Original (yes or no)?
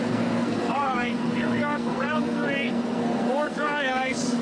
no